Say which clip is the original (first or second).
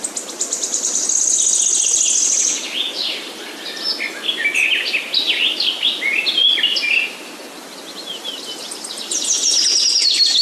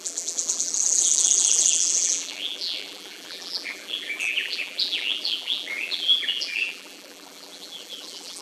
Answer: first